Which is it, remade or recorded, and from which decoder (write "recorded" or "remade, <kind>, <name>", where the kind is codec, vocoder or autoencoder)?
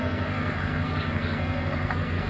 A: remade, codec, SNAC